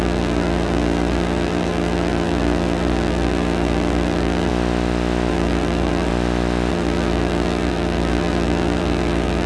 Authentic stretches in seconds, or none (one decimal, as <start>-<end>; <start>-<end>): 4.5-5.3; 6.1-6.7